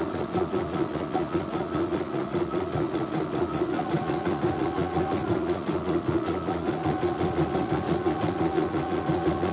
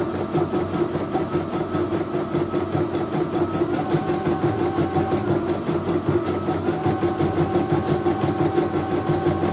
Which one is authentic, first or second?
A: second